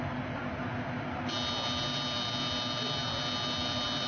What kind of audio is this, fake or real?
real